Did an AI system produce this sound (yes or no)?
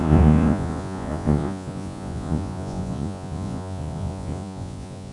yes